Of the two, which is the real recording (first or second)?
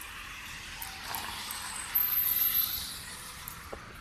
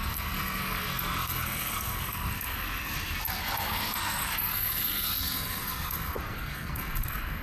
first